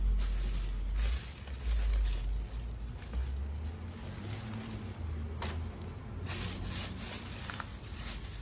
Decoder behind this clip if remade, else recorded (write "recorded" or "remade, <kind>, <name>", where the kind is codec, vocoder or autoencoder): recorded